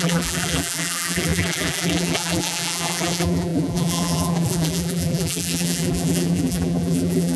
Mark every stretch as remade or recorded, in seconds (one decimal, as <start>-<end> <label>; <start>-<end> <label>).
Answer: 0.0-7.4 remade